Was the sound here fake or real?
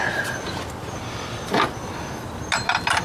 real